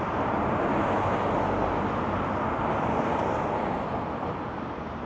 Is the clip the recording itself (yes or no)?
yes